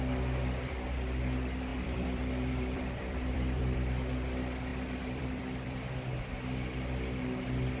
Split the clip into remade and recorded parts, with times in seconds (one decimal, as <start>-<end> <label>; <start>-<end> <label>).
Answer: 0.0-1.7 recorded; 1.7-3.6 remade; 3.6-4.7 recorded; 4.7-5.8 remade; 5.8-7.8 recorded